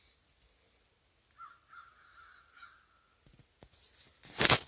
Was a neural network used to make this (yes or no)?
no